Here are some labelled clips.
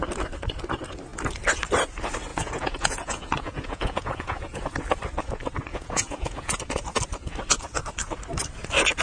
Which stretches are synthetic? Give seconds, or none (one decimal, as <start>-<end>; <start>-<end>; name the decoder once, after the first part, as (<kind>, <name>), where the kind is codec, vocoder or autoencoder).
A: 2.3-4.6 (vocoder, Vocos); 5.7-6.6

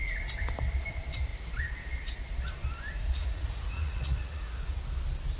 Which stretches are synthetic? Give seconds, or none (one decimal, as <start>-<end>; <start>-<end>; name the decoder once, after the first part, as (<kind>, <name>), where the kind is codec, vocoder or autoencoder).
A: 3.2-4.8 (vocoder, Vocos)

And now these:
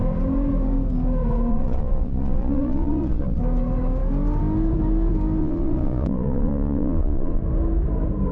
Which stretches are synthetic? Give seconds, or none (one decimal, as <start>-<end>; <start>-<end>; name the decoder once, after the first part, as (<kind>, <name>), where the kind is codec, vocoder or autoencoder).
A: 1.5-3.4 (vocoder, Vocos); 5.4-7.4

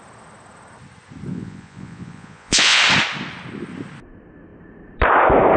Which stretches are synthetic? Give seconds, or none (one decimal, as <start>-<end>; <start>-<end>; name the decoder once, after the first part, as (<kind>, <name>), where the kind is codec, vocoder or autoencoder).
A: 1.3-2.8 (vocoder, Vocos)

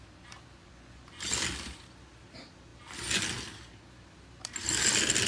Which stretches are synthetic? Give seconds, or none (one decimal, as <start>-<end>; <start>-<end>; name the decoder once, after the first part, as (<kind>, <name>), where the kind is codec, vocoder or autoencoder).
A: 0.6-1.2 (vocoder, Vocos)

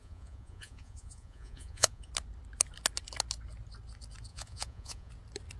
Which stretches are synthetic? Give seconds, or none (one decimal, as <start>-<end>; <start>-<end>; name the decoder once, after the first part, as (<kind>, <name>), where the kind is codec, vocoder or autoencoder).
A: 0.0-2.1 (vocoder, Vocos); 4.3-5.1

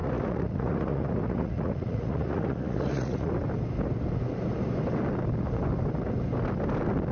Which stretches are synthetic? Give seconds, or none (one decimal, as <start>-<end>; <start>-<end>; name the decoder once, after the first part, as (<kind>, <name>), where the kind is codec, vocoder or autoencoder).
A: 0.0-3.3 (vocoder, Vocos)